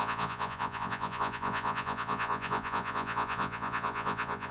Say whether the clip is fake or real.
fake